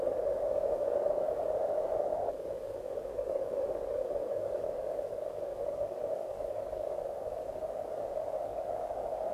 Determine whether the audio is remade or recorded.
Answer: remade